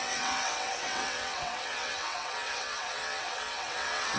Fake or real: fake